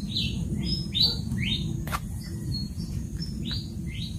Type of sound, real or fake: fake